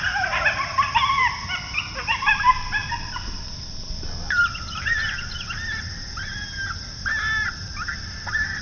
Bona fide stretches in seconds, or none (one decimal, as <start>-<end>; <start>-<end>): none